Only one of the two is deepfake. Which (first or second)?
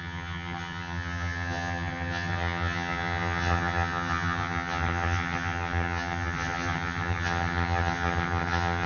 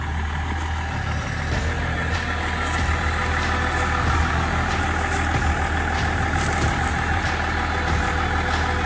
first